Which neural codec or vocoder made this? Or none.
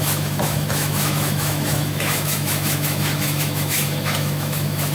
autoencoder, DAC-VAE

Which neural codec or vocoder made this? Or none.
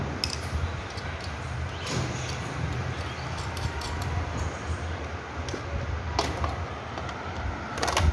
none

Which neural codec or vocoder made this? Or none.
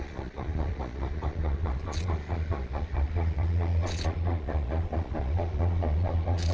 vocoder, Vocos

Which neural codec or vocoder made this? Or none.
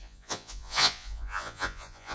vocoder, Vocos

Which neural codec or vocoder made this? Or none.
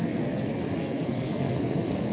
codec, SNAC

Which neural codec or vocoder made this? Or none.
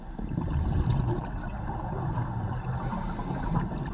none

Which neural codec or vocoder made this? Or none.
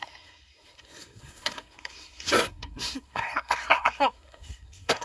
codec, SNAC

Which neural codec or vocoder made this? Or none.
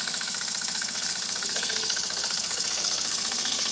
codec, SNAC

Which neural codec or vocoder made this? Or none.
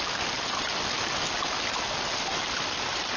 none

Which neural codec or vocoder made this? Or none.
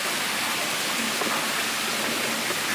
vocoder, BigVGAN v2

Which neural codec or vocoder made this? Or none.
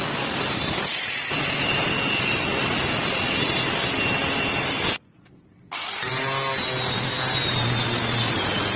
none